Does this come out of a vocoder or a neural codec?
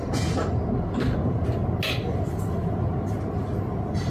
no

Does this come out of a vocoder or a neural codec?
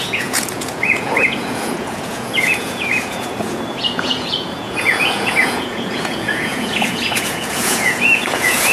yes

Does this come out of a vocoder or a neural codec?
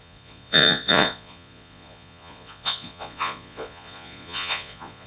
yes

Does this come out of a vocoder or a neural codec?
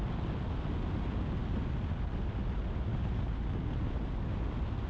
no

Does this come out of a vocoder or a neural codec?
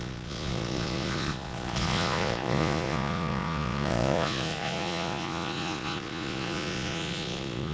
yes